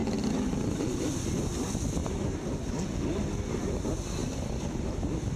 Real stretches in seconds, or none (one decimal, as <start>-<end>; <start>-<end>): 0.0-4.2